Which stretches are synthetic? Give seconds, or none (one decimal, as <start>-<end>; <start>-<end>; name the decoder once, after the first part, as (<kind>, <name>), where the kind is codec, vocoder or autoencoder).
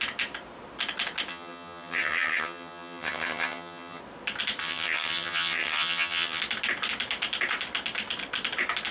1.3-4.0 (vocoder, HiFi-GAN); 4.6-6.4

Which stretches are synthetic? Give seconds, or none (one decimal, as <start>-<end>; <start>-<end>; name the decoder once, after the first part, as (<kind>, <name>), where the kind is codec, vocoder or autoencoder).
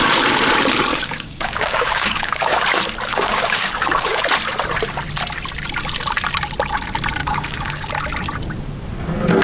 0.9-2.6 (codec, DAC); 3.1-4.2; 7.2-7.9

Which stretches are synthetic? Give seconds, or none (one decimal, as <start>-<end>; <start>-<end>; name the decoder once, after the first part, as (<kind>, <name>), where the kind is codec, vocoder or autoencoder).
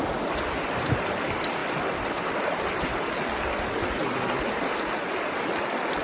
none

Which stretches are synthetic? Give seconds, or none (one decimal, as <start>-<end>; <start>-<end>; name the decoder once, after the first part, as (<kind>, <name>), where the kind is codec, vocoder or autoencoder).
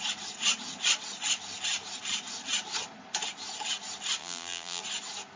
4.2-4.8 (vocoder, BigVGAN v2)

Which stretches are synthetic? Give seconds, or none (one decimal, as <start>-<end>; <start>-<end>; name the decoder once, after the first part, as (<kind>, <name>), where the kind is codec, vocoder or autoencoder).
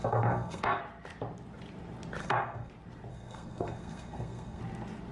0.0-0.8 (codec, SNAC); 2.2-2.7; 3.1-4.6